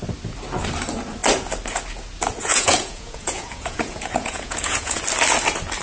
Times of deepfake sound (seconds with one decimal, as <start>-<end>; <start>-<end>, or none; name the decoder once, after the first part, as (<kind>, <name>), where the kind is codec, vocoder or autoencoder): 2.5-5.0 (vocoder, Vocos)